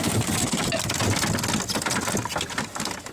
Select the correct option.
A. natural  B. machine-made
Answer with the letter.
A